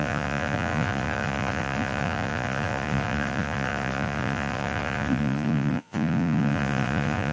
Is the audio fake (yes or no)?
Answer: yes